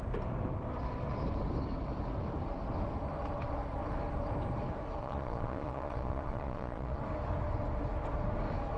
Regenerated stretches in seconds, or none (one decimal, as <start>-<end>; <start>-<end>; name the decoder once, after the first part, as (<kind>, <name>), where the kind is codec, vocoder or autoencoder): 5.0-7.0 (vocoder, Vocos)

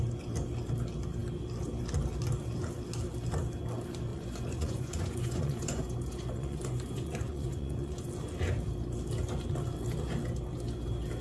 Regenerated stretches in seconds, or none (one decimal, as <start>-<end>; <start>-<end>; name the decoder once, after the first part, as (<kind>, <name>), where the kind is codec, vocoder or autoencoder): 4.1-8.1 (vocoder, Vocos)

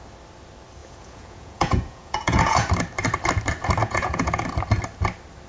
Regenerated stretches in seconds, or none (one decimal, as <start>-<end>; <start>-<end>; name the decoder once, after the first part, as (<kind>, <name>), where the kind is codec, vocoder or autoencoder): 0.8-2.7 (vocoder, Vocos); 3.8-4.4

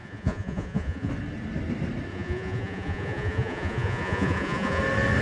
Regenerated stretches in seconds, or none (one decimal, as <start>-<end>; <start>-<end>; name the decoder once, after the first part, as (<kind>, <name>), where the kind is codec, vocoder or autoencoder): 0.0-1.1 (vocoder, Vocos); 2.1-4.8

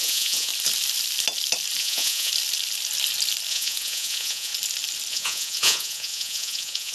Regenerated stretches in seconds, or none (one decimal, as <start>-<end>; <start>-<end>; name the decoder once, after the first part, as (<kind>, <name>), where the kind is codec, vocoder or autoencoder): 0.0-0.5 (vocoder, Vocos); 1.8-2.3; 3.5-4.5; 5.1-6.9